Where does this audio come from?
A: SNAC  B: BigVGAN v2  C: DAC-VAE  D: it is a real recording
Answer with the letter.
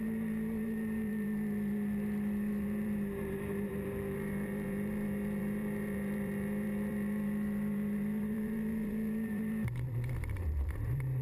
B